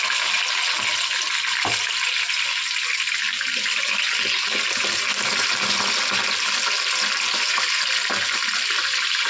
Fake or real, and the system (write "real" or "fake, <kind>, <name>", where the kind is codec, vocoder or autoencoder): real